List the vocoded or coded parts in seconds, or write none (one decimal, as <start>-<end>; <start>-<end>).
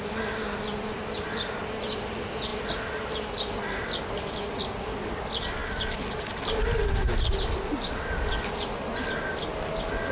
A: none